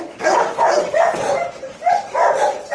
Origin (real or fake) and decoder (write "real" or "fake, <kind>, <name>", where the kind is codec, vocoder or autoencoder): fake, vocoder, BigVGAN v2